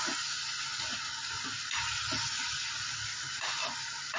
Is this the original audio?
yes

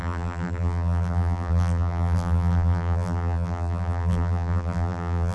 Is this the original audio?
no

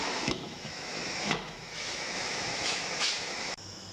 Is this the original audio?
no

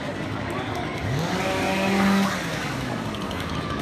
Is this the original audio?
no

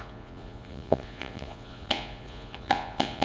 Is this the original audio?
no